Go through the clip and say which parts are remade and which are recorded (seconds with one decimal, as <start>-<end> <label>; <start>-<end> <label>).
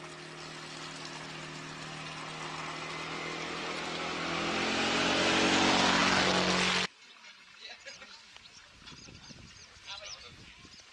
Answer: 0.0-10.9 recorded